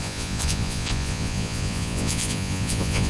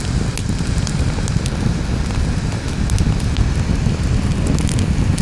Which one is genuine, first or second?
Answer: second